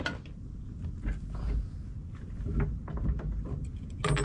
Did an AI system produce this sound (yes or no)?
no